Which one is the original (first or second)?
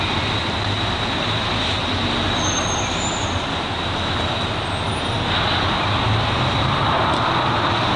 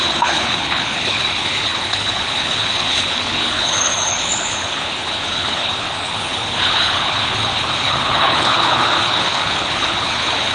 first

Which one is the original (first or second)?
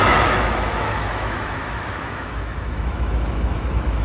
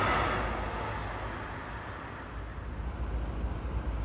second